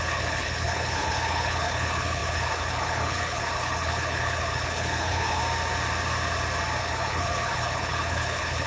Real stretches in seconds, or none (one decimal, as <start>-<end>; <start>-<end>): 5.4-6.8